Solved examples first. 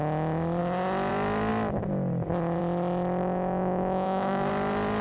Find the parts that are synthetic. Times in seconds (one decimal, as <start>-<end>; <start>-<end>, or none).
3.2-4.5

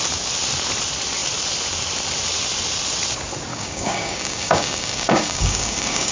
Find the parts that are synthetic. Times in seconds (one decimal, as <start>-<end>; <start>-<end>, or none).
3.5-6.1

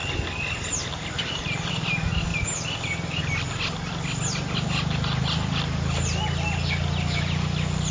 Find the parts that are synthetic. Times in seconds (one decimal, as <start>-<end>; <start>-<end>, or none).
none

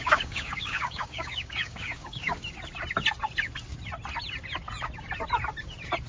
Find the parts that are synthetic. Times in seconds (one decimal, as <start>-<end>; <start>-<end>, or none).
0.0-2.3

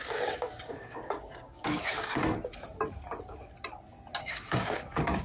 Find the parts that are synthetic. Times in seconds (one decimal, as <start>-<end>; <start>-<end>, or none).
0.0-2.2; 4.2-5.2

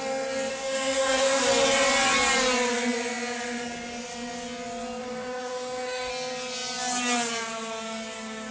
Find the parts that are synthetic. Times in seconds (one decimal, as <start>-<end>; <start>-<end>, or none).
0.5-1.4; 5.0-6.1